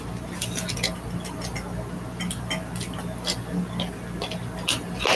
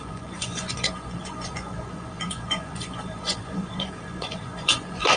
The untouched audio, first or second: first